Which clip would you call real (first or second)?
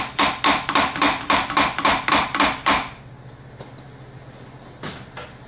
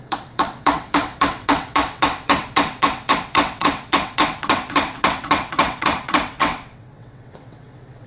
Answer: first